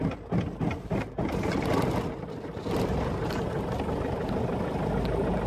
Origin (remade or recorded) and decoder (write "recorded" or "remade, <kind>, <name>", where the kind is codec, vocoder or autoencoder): recorded